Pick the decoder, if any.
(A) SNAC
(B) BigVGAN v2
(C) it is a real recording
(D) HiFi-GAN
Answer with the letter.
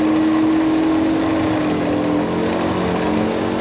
C